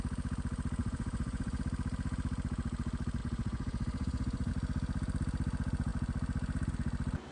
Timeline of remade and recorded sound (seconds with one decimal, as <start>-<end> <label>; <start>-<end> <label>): 0.0-0.8 recorded; 0.8-1.6 remade; 1.6-3.2 recorded; 3.2-4.5 remade; 4.5-7.3 recorded